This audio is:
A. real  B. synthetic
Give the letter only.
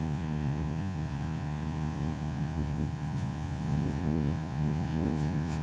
B